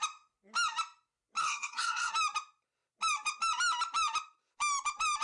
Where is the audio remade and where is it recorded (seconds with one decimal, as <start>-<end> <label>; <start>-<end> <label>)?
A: 0.0-1.4 recorded; 1.4-2.1 remade; 2.1-5.2 recorded